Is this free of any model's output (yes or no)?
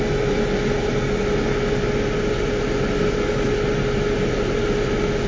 yes